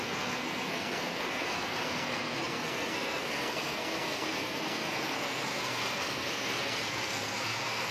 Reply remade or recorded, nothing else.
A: remade